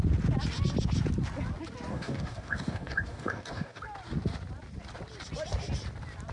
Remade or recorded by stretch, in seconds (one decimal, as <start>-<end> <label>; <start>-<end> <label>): 0.0-1.9 recorded; 1.9-3.8 remade; 3.8-6.3 recorded